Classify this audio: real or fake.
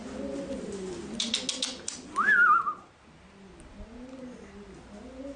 real